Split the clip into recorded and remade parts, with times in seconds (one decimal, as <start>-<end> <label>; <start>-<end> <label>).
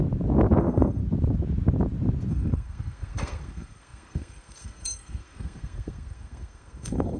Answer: 0.0-0.6 recorded; 0.6-1.0 remade; 1.0-2.3 recorded; 2.3-7.2 remade